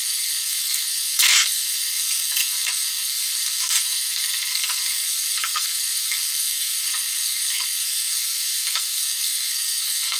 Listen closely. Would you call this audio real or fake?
fake